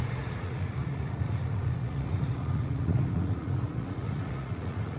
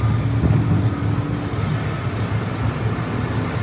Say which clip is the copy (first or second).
first